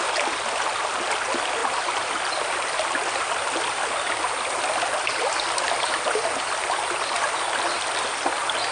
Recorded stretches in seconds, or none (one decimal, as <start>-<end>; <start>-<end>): 0.0-8.7